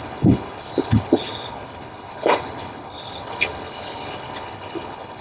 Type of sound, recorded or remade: remade